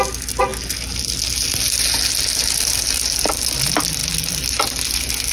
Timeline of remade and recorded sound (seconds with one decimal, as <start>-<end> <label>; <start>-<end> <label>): 0.0-5.3 recorded